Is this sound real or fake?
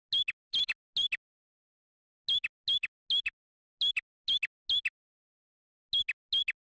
real